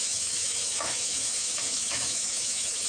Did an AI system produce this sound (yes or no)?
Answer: yes